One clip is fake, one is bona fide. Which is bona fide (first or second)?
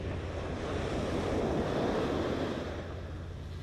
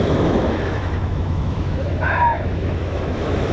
first